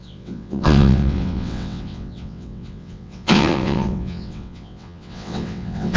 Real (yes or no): no